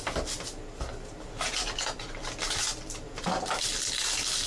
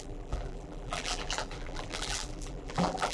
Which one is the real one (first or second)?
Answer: first